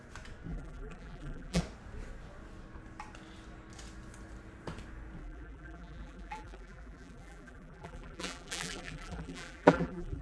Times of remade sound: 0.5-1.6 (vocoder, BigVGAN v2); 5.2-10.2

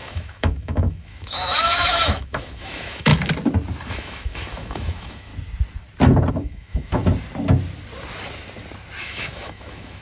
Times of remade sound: 0.0-3.1 (autoencoder, DAC-VAE); 3.9-5.3; 6.3-7.0; 9.0-10.0

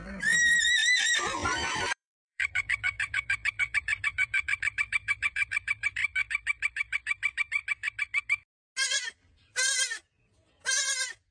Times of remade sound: 0.0-6.0 (vocoder, BigVGAN v2)

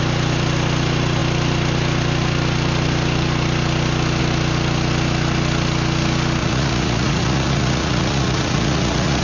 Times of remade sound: 6.4-9.2 (vocoder, Vocos)